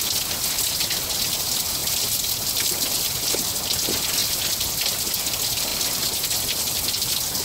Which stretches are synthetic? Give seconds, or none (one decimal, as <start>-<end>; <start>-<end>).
none